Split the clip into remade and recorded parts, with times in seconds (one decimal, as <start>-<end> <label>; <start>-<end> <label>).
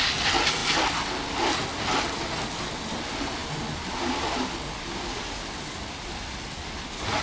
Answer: 0.0-7.2 recorded